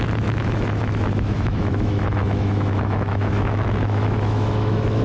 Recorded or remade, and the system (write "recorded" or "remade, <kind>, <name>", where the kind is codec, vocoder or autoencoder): remade, autoencoder, DAC-VAE